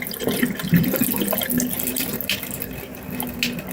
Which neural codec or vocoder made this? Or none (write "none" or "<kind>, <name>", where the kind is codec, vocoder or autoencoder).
none